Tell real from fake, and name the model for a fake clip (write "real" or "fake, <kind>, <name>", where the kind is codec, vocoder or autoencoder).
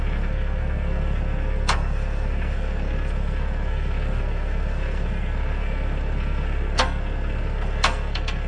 fake, codec, SNAC